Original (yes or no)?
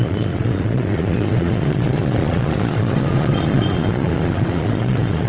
no